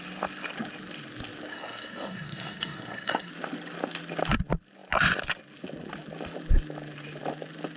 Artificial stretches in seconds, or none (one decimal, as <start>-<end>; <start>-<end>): 1.5-3.3